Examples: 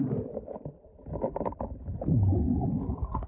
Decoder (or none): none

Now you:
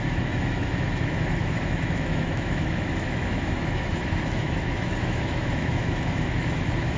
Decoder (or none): autoencoder, DAC-VAE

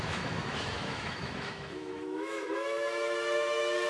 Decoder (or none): autoencoder, DAC-VAE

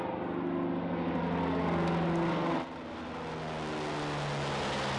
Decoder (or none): none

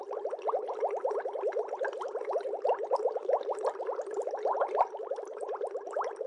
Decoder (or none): none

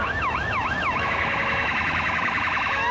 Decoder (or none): autoencoder, DAC-VAE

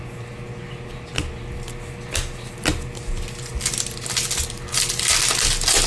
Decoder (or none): none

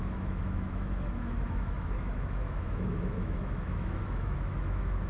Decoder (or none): autoencoder, DAC-VAE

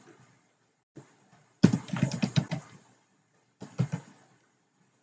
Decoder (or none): none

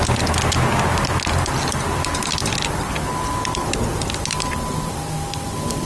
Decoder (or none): none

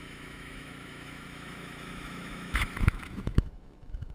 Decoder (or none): autoencoder, DAC-VAE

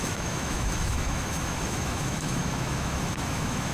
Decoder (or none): autoencoder, DAC-VAE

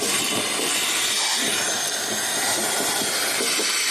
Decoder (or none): none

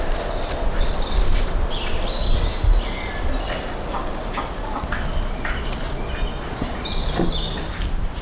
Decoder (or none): none